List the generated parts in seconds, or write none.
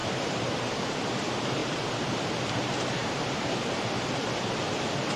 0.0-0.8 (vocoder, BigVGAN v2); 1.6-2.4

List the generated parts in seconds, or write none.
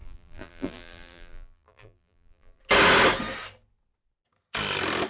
0.0-2.6 (vocoder, BigVGAN v2)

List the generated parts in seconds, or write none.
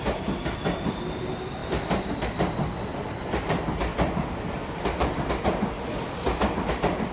0.0-7.1 (vocoder, BigVGAN v2)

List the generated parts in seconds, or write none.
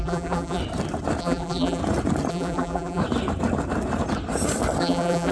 0.0-0.6 (vocoder, BigVGAN v2); 1.2-1.8; 2.3-3.0; 4.8-5.3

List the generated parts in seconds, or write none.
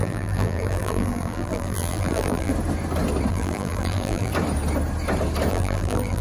0.0-2.5 (vocoder, BigVGAN v2); 3.3-4.3; 5.5-6.2